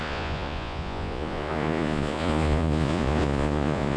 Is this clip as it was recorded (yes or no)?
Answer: no